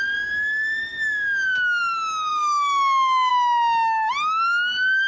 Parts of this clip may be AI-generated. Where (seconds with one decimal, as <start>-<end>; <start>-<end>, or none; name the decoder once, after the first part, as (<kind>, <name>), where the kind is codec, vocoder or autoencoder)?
2.3-3.3 (autoencoder, DAC-VAE)